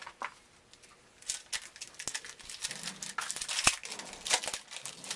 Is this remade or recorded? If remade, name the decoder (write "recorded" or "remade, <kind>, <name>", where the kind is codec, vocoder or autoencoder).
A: recorded